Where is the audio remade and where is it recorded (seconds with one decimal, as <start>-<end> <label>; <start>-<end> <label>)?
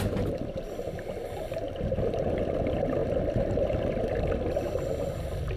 0.0-5.6 recorded